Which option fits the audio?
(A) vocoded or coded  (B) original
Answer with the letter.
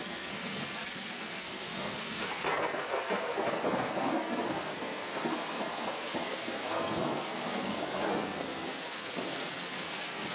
A